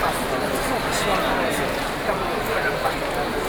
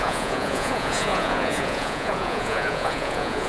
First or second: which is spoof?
second